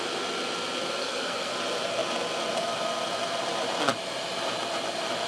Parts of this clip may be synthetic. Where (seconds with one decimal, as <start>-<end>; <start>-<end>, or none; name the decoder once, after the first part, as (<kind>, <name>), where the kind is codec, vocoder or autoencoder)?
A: 1.0-1.5 (codec, SNAC)